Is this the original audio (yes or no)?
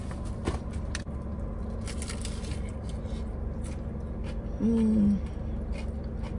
yes